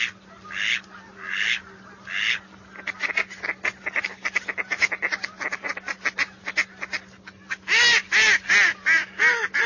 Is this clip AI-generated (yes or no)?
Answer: no